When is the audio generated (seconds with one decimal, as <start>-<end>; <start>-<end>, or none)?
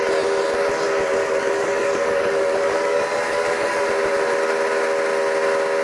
1.2-3.8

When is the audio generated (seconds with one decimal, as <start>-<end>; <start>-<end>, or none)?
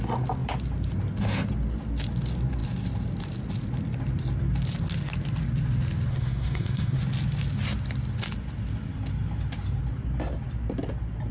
6.1-7.0